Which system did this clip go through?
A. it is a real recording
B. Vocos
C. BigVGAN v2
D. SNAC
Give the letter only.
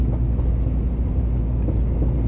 A